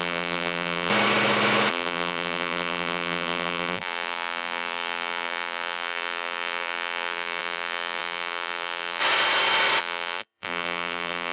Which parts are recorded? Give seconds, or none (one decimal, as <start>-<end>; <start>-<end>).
0.9-1.7; 9.0-9.8